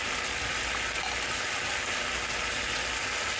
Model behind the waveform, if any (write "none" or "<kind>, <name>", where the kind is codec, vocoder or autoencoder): none